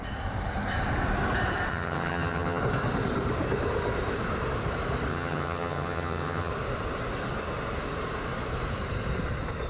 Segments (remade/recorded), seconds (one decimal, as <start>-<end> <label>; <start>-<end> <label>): 0.0-1.7 recorded; 1.7-2.6 remade; 2.6-5.1 recorded; 5.1-6.5 remade; 6.5-9.7 recorded